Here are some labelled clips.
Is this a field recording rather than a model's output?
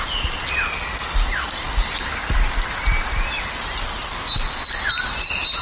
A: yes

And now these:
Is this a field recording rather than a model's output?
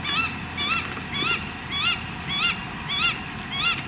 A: yes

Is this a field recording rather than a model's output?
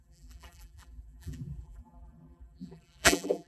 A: no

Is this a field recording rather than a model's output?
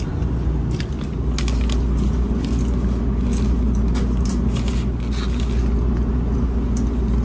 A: yes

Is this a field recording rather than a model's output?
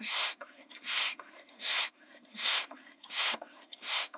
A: no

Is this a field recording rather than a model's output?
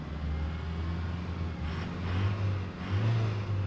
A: yes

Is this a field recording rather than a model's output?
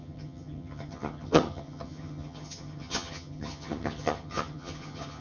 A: no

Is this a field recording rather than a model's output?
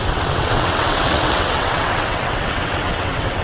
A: no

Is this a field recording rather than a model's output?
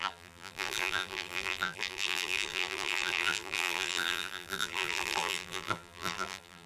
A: no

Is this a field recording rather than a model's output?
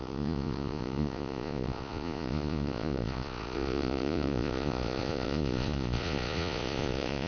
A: no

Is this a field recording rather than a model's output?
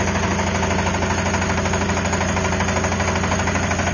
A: yes